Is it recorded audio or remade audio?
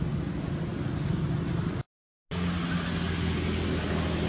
recorded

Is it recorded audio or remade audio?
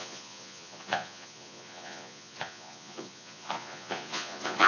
remade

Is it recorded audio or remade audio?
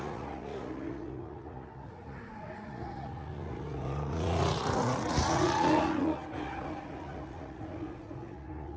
remade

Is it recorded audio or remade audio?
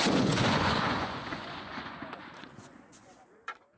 remade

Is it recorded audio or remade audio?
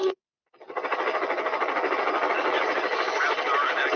recorded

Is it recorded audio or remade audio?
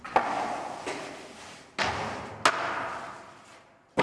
recorded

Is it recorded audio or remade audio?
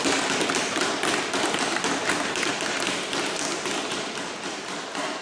recorded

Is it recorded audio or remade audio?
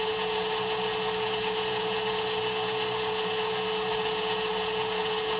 remade